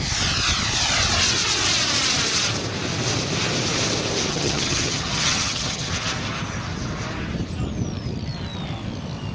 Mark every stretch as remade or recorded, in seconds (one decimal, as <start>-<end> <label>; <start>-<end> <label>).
0.0-4.3 recorded; 4.3-5.9 remade; 5.9-9.3 recorded